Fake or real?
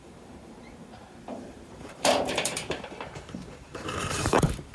fake